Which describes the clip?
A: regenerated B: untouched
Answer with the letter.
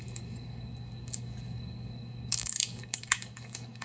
A